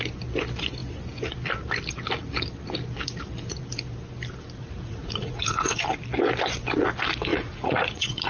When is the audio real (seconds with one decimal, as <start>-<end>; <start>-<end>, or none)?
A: 0.0-4.6; 5.8-7.3

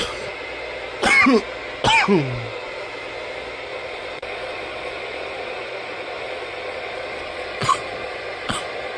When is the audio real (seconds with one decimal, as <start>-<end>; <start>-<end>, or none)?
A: 0.0-3.7